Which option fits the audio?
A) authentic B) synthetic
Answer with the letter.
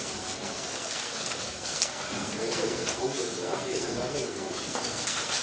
B